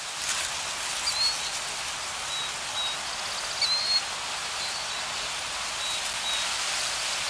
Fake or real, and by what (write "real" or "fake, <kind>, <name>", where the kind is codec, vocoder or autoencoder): real